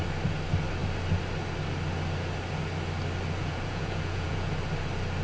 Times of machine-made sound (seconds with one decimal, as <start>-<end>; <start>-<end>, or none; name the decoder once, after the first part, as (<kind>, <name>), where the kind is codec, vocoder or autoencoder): 3.4-4.5 (vocoder, Vocos)